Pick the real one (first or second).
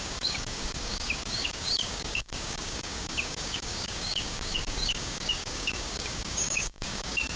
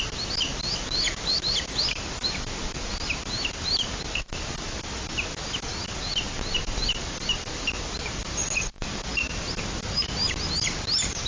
second